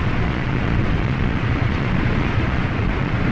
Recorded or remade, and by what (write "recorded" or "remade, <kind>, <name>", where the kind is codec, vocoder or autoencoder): remade, vocoder, Vocos